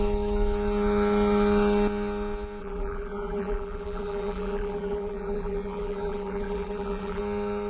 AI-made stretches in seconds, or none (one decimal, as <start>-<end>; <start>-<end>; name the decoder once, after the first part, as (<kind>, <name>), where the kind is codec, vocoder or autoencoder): 2.6-7.2 (vocoder, BigVGAN v2)